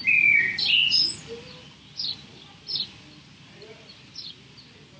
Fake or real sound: real